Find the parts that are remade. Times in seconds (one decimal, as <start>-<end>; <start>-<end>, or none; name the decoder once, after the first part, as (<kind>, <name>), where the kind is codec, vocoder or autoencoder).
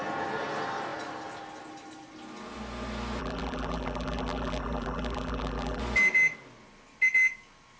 3.2-5.8 (vocoder, BigVGAN v2)